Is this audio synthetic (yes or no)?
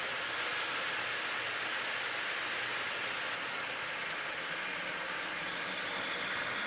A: no